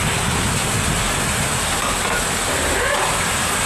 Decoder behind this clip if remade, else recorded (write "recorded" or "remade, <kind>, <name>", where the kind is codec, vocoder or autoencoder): recorded